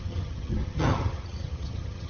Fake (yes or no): yes